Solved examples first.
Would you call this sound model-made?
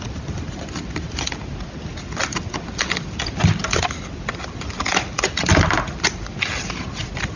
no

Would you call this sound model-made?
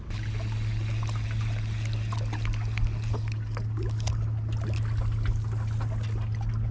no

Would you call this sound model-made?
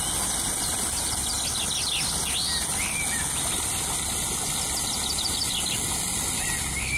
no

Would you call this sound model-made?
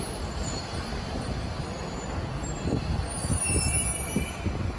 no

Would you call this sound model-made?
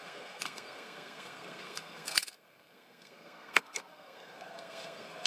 yes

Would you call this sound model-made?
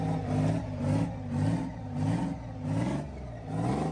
no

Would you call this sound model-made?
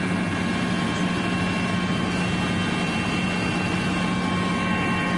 no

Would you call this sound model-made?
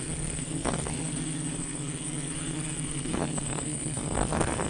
yes